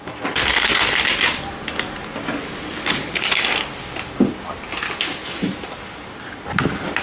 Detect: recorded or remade recorded